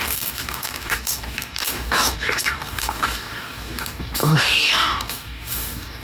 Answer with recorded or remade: remade